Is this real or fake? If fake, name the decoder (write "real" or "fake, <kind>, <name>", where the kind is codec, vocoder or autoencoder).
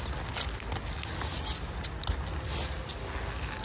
real